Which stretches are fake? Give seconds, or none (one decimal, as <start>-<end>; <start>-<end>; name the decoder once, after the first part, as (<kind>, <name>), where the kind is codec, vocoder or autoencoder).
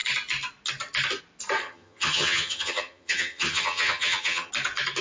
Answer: 1.6-4.5 (vocoder, HiFi-GAN)